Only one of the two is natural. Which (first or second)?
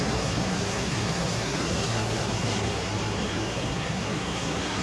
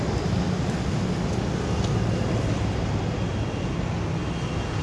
second